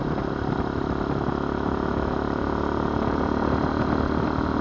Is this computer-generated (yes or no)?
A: no